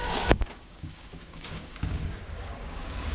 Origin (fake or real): fake